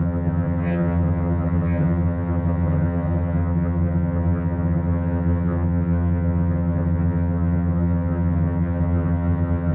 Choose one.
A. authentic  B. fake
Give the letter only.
B